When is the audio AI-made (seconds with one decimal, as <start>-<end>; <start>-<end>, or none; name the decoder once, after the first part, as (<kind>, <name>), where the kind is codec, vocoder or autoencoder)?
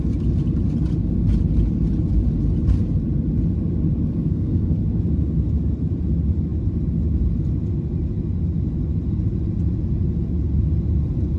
4.2-4.8 (codec, SNAC)